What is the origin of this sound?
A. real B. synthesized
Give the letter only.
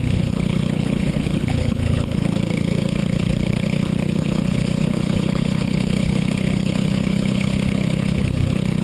B